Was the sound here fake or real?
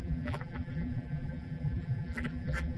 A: fake